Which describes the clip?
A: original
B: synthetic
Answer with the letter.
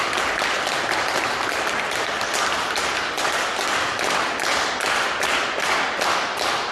A